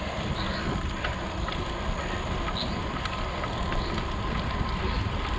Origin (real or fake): real